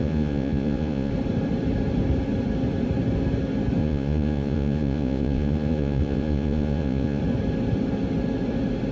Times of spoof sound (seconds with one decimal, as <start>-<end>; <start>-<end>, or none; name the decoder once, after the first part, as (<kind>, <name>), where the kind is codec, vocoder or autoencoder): 0.0-1.1 (vocoder, Vocos); 3.8-7.2